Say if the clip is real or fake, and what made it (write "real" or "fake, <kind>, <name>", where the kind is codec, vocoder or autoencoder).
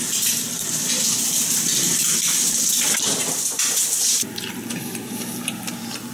fake, vocoder, BigVGAN v2